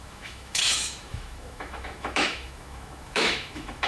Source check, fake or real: fake